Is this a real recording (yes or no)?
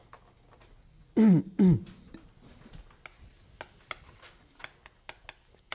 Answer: yes